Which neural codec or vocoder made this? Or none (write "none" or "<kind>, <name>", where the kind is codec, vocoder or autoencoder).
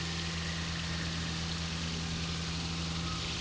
none